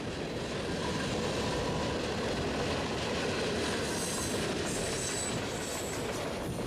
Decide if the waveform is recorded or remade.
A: recorded